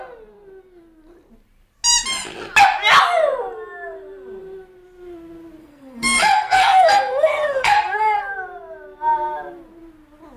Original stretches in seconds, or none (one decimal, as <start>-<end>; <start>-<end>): 0.0-5.6; 8.2-10.4

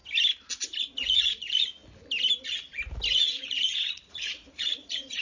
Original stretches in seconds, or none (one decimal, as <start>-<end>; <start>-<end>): 0.0-0.9; 1.8-3.2